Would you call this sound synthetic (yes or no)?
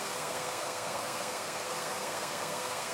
yes